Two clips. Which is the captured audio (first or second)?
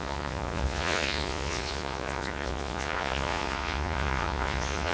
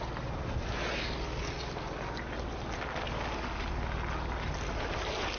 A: second